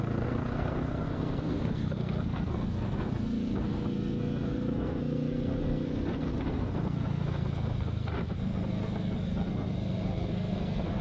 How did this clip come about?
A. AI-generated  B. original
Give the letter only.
A